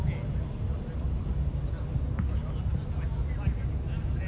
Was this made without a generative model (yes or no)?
yes